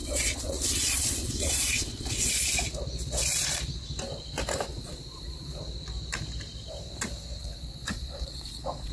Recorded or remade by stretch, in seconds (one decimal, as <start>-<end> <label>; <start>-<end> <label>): 0.0-2.3 remade; 2.3-4.7 recorded; 4.7-5.6 remade; 5.6-7.4 recorded; 7.4-8.9 remade